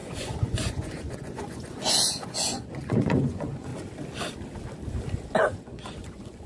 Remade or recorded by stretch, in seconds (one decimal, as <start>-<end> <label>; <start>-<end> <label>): 0.0-3.7 remade; 3.7-5.4 recorded; 5.4-6.5 remade